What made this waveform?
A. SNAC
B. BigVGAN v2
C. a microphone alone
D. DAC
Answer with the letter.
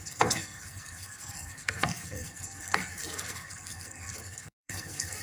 A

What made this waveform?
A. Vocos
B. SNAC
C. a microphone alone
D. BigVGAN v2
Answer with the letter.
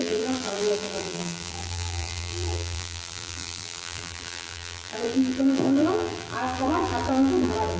D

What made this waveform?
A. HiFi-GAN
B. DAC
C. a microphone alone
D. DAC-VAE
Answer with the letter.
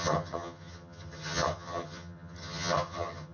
A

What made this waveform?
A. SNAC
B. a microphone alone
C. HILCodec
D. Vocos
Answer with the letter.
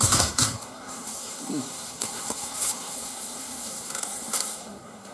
A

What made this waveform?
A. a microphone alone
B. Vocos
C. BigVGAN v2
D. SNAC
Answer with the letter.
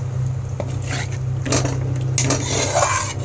A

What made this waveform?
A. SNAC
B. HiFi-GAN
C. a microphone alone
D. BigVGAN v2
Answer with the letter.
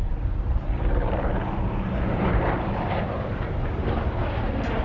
D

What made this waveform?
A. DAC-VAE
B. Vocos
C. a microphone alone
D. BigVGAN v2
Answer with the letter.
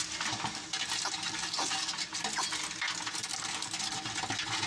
C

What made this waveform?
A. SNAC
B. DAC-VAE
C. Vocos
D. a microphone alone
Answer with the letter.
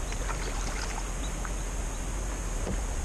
D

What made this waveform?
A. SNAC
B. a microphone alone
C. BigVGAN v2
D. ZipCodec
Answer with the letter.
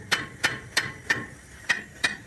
C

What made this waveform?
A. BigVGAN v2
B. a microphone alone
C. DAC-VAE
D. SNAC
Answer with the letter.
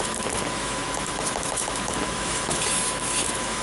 C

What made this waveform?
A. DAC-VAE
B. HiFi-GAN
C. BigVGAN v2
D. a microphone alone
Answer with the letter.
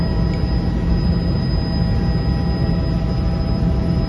D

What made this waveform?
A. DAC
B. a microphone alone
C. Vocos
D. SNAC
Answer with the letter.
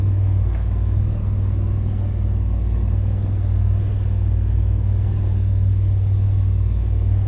D